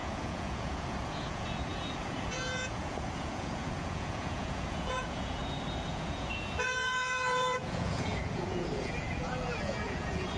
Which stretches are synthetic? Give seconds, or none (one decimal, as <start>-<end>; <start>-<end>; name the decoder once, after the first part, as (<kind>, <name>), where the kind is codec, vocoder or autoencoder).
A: 0.0-5.4 (vocoder, Vocos); 5.9-10.4